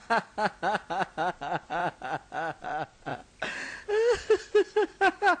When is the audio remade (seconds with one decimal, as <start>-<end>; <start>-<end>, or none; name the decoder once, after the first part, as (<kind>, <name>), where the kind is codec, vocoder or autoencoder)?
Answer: 1.3-1.8 (vocoder, Vocos); 2.6-3.1